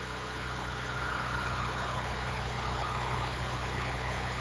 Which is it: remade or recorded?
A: remade